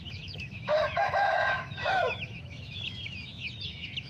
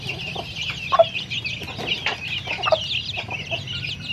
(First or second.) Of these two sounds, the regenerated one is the first